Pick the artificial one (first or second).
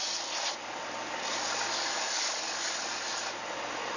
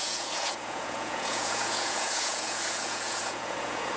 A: second